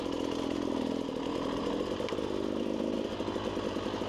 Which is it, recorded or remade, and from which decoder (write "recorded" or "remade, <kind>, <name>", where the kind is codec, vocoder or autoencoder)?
recorded